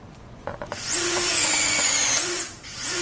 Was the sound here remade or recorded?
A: remade